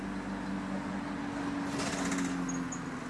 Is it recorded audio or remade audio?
recorded